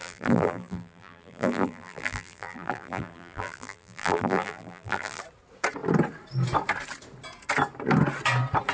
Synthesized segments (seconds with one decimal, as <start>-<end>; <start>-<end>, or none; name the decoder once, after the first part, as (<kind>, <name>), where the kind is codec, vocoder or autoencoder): 0.0-5.2 (vocoder, BigVGAN v2)